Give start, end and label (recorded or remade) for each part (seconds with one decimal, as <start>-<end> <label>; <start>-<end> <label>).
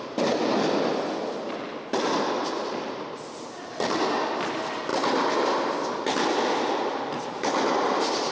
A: 0.0-8.3 recorded